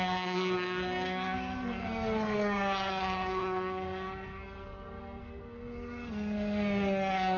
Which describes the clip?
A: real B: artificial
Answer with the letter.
B